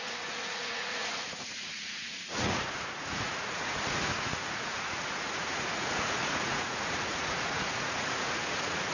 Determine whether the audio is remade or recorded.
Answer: remade